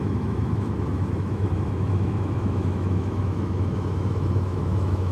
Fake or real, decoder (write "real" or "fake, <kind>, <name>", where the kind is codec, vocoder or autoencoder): fake, autoencoder, DAC-VAE